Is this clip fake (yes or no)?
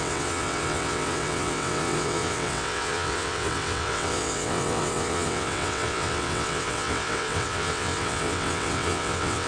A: yes